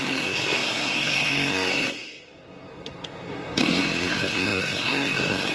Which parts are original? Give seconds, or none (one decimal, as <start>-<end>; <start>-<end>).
none